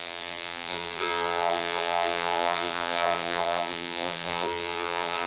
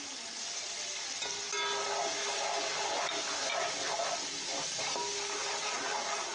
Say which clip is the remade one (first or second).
first